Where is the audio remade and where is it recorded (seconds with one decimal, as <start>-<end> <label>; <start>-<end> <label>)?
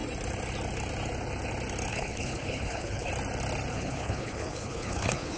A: 0.0-1.9 recorded; 1.9-3.1 remade; 3.1-3.7 recorded; 3.7-5.4 remade